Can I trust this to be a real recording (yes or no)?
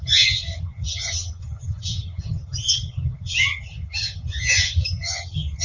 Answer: no